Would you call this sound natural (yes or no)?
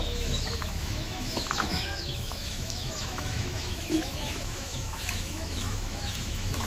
no